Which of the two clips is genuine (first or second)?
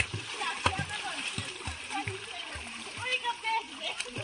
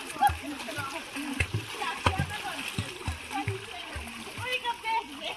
second